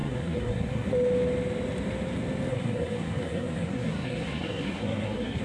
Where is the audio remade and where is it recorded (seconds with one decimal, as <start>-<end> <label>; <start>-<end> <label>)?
0.0-0.9 remade; 0.9-2.5 recorded; 2.5-5.4 remade